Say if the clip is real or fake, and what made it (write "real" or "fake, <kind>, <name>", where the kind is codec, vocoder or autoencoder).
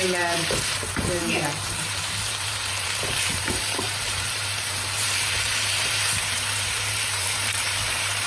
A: fake, vocoder, BigVGAN v2